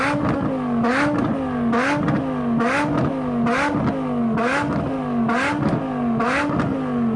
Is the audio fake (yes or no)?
no